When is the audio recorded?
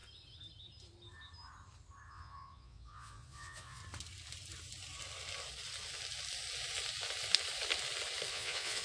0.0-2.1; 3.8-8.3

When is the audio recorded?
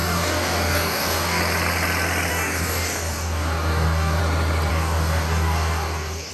1.4-2.3; 4.2-4.7